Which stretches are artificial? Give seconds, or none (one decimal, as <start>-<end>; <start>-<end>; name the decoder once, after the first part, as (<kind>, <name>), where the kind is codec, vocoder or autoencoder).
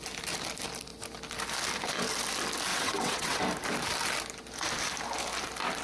2.7-3.4 (vocoder, WaveNeXt)